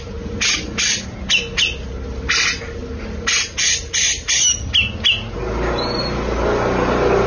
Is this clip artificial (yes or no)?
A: no